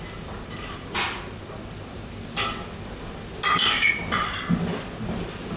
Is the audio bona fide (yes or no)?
yes